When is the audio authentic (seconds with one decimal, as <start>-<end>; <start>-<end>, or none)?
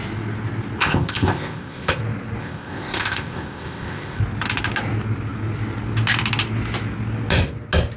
0.0-0.8; 2.0-2.4; 4.2-8.0